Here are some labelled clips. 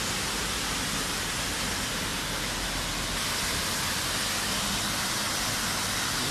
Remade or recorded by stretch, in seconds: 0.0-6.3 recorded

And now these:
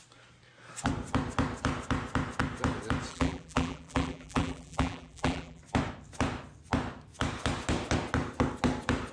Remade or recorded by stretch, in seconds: 0.0-3.1 recorded; 3.1-5.6 remade; 5.6-9.1 recorded